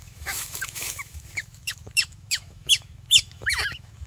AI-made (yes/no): yes